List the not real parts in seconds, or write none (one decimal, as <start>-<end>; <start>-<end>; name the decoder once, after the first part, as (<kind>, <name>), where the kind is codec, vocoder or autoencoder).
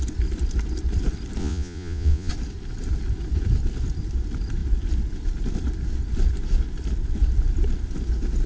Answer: 1.4-2.3 (vocoder, Vocos)